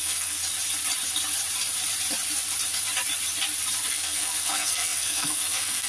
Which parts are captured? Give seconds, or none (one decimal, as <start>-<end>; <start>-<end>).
0.4-3.9